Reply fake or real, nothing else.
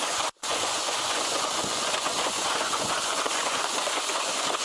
fake